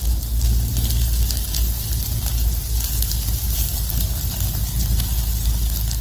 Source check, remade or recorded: recorded